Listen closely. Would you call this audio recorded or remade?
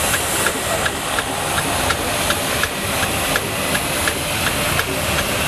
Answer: recorded